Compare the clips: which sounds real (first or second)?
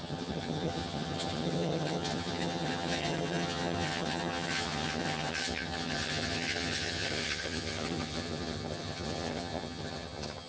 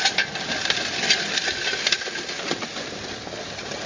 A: second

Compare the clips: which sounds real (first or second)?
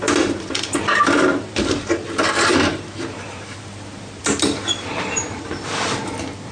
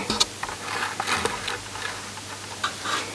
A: second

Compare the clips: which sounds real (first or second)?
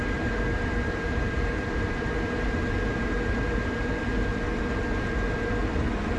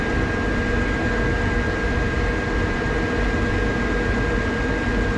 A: second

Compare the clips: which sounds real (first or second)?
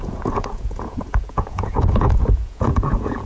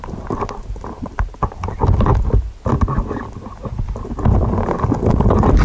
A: second